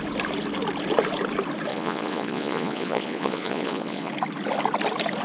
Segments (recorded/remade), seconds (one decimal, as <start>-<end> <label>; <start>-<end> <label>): 0.0-1.7 recorded; 1.7-4.1 remade; 4.1-5.2 recorded